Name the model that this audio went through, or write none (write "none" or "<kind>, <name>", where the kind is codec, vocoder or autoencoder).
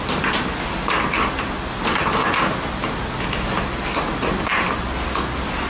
none